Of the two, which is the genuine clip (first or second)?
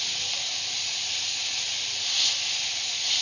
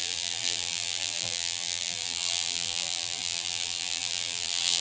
first